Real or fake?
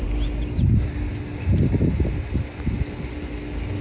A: real